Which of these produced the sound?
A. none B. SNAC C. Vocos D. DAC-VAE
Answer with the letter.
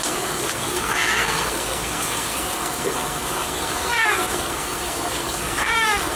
B